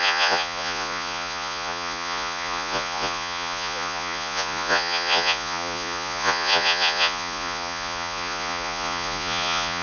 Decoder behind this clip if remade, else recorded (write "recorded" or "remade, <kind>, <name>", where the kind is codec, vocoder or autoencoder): remade, vocoder, Vocos